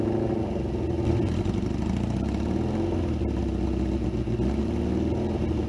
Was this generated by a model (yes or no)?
no